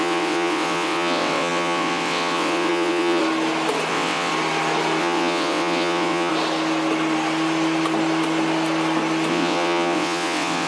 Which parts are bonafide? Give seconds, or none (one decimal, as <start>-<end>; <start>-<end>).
3.2-3.9; 4.3-5.0; 6.3-9.3